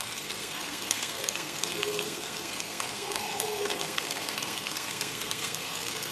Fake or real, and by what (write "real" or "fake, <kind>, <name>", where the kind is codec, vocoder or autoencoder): fake, codec, SNAC